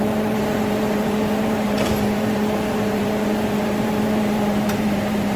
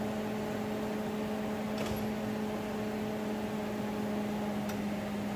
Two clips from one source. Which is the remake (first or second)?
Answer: first